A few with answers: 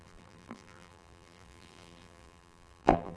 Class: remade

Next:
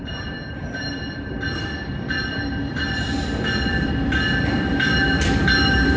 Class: remade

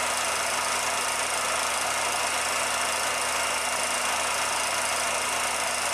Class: recorded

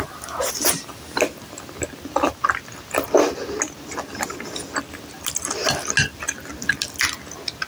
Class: recorded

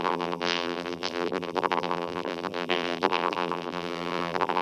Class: remade